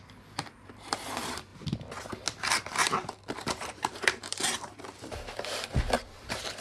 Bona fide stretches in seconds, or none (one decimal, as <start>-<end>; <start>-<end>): 1.5-2.5